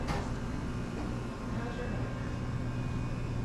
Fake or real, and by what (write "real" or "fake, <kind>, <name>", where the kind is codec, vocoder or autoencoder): real